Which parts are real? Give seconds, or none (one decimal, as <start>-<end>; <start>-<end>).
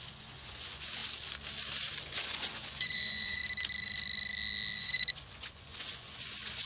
1.0-2.0; 3.4-4.8